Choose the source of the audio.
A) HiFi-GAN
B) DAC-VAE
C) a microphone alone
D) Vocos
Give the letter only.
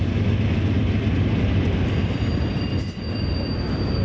C